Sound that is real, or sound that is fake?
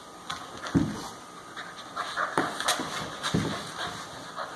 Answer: real